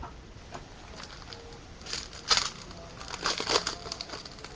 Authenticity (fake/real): real